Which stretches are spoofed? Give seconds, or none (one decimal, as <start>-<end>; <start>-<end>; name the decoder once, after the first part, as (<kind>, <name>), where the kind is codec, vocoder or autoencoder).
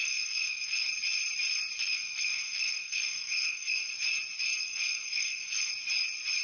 0.0-0.9 (codec, SNAC); 1.8-3.9; 4.6-5.7